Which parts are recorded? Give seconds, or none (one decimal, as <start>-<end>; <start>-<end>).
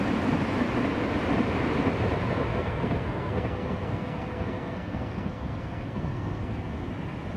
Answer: 0.0-2.5; 6.9-7.4